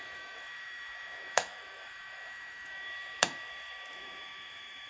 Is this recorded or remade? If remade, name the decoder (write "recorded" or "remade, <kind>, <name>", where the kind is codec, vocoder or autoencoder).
remade, autoencoder, DAC-VAE